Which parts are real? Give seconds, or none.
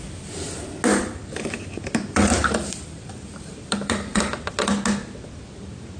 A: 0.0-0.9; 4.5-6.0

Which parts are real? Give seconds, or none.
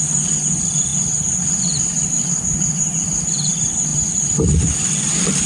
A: 0.9-1.6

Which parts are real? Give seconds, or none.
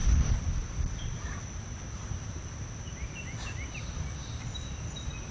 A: 0.0-5.3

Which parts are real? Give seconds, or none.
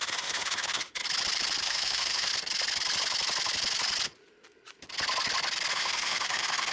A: 1.0-1.6; 2.3-5.7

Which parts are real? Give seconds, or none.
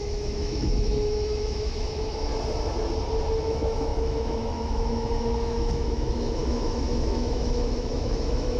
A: 2.3-3.4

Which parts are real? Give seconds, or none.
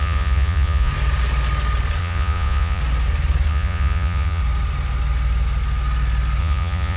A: 0.9-2.0; 2.8-3.5; 4.4-6.4